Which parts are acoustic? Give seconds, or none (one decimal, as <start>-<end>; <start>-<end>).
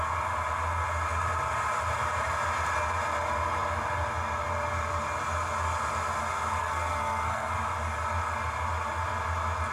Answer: 0.0-6.6; 7.5-9.7